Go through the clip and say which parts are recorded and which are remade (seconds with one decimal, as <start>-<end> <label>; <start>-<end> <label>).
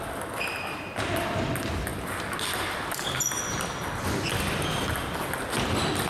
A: 0.0-6.1 recorded